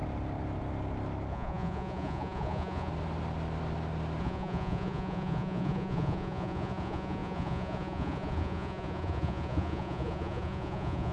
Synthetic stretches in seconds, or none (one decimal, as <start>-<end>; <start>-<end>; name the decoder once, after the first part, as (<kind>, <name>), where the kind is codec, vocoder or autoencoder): 1.3-2.9 (vocoder, Vocos); 4.2-11.1